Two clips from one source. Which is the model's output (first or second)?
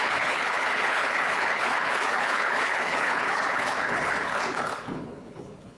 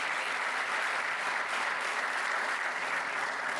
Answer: first